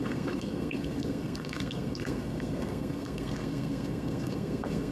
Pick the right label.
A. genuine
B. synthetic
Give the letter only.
B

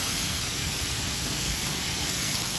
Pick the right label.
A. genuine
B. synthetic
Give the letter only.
B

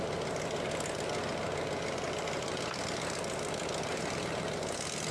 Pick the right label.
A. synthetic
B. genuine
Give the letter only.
B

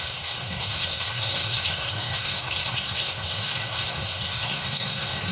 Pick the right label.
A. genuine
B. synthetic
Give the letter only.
B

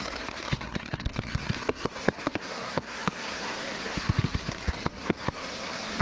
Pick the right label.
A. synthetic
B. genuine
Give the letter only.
A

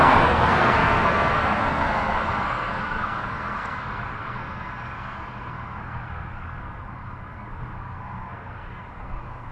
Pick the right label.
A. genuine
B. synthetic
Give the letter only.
B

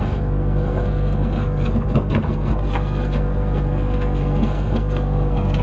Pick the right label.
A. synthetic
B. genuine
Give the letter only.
A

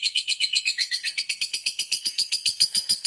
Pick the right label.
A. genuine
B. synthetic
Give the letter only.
B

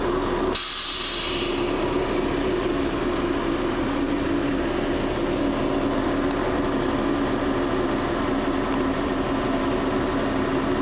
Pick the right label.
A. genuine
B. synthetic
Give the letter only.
A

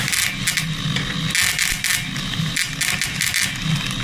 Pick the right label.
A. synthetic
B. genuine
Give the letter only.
B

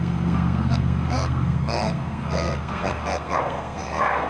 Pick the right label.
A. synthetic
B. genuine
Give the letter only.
A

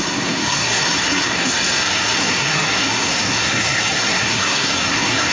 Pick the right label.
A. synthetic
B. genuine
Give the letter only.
A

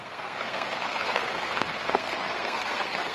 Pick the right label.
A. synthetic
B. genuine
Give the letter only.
A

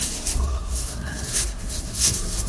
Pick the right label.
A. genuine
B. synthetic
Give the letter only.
B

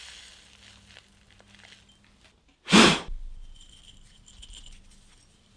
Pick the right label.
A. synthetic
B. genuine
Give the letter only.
B